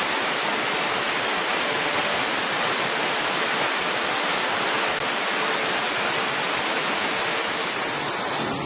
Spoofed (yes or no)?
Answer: no